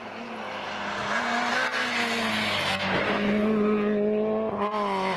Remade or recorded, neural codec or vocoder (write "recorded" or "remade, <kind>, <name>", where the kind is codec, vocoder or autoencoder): recorded